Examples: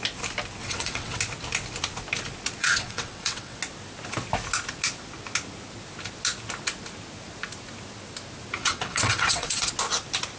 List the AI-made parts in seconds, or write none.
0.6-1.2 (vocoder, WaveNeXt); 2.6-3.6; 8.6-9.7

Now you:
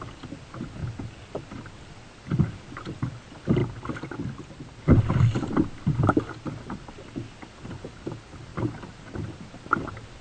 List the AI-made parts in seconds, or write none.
none